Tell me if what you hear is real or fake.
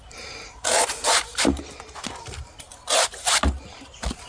real